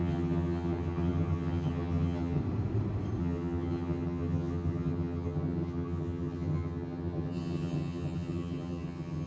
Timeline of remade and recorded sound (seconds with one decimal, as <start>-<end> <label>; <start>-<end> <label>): 0.0-2.4 remade; 2.4-3.2 recorded; 3.2-9.3 remade